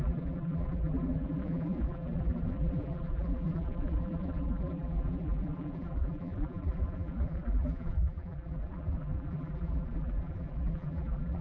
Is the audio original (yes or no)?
no